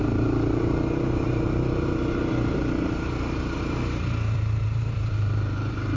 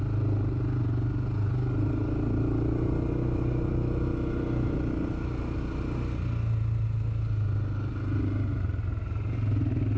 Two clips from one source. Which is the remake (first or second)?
first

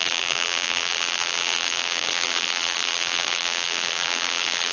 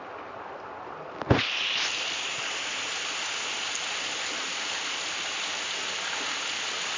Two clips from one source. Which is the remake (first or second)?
first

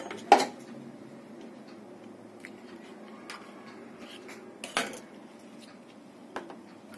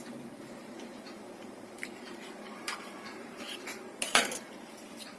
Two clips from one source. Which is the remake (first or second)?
second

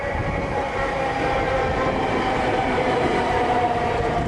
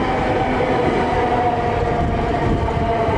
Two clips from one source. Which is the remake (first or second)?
first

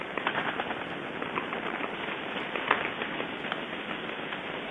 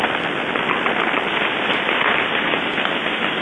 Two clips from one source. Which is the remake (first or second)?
first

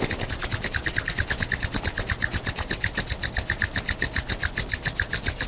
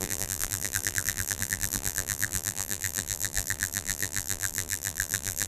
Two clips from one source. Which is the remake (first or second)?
second